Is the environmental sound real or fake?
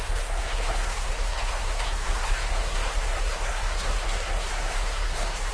fake